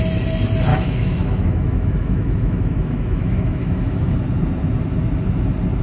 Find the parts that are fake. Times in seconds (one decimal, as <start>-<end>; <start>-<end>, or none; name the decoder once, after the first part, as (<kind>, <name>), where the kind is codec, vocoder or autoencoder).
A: 0.7-4.2 (autoencoder, DAC-VAE)